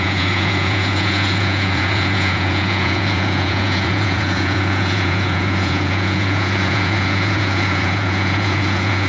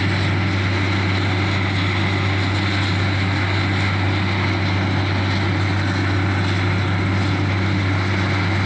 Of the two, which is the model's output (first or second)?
first